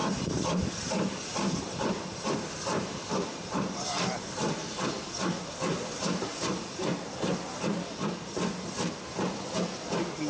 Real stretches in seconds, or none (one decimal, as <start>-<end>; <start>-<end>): 2.3-2.7; 4.7-10.3